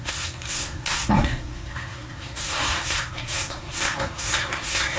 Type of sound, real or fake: fake